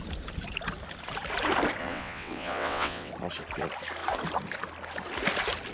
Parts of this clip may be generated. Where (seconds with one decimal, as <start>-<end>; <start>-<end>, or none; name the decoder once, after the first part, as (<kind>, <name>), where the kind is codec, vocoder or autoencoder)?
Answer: 1.8-3.1 (vocoder, WaveNeXt)